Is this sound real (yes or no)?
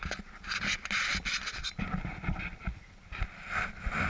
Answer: yes